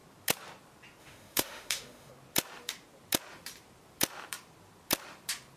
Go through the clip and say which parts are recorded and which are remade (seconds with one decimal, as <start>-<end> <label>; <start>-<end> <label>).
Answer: 0.0-1.0 recorded; 1.0-2.1 remade; 2.1-5.6 recorded

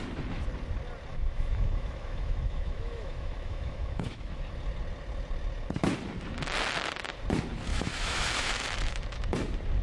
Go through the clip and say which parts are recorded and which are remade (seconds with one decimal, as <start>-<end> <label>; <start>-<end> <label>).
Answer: 0.0-1.1 recorded; 1.1-4.4 remade; 4.4-7.7 recorded; 7.7-8.9 remade; 8.9-9.8 recorded

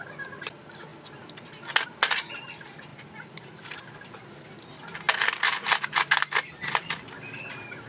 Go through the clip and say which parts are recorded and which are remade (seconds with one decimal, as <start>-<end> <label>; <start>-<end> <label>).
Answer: 0.0-7.9 recorded

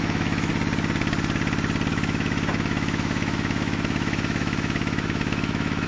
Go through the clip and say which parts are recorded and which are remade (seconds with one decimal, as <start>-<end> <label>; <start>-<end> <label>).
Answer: 0.0-0.5 remade; 0.5-1.9 recorded; 1.9-5.9 remade

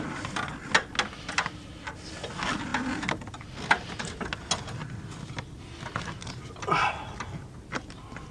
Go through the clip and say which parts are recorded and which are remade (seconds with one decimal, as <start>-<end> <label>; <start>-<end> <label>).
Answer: 0.0-8.3 recorded

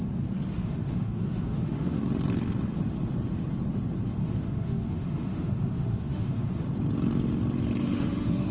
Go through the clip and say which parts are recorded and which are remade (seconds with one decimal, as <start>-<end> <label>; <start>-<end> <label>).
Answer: 0.0-0.6 recorded; 0.6-2.0 remade; 2.0-4.2 recorded; 4.2-6.5 remade; 6.5-7.8 recorded; 7.8-8.5 remade

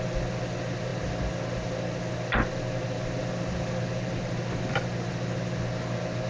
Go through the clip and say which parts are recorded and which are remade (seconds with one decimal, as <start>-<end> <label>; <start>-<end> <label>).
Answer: 0.0-6.3 recorded